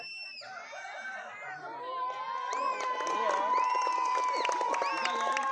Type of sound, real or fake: real